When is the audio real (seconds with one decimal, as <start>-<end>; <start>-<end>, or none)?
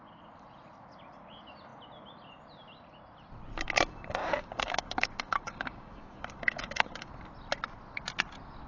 0.0-4.2; 7.1-8.7